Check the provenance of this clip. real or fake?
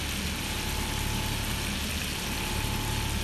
real